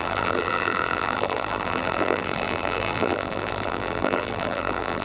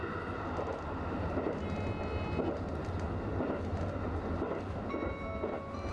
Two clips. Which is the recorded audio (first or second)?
second